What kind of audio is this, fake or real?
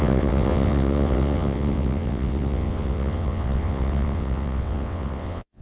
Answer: fake